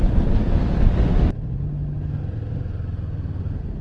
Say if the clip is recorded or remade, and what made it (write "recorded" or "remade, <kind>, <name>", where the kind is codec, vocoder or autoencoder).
recorded